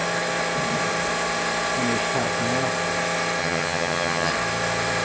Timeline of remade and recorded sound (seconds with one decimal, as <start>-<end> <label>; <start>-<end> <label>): 0.0-3.4 recorded; 3.4-4.3 remade; 4.3-5.0 recorded